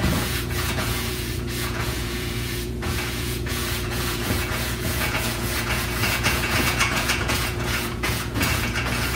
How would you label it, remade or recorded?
remade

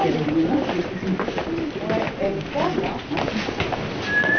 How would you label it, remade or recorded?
recorded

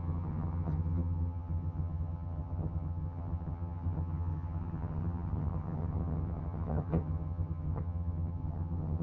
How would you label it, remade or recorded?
remade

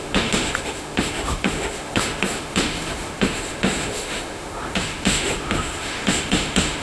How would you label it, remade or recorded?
remade